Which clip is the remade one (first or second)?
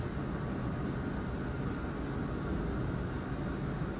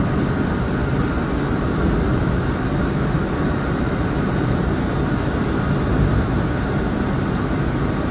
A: second